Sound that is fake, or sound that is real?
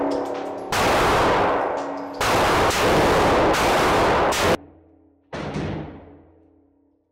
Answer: real